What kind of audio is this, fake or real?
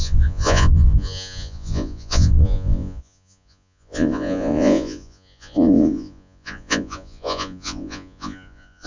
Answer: fake